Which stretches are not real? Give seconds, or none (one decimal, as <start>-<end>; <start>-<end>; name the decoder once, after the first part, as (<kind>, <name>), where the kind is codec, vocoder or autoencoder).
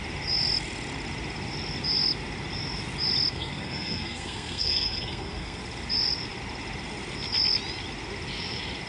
3.3-5.6 (codec, SNAC)